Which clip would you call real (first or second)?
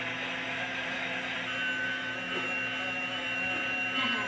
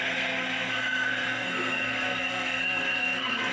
first